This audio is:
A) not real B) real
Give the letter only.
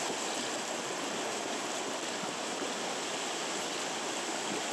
B